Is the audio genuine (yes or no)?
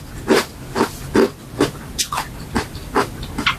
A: yes